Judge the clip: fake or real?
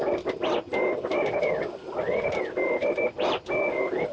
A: real